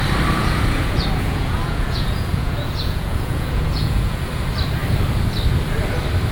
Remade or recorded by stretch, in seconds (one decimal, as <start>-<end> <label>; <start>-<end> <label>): 0.0-0.4 recorded; 0.4-4.2 remade; 4.2-6.3 recorded